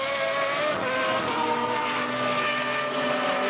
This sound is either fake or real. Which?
real